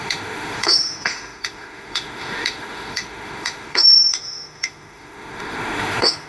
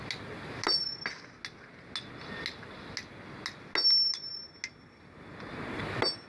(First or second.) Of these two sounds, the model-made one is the first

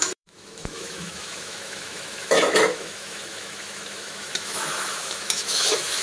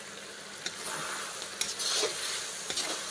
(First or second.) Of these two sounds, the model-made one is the first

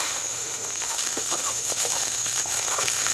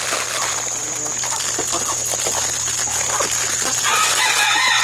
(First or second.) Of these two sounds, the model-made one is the first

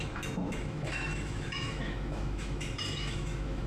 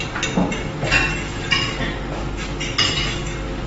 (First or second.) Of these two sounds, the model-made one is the first